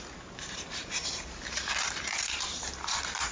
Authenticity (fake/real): fake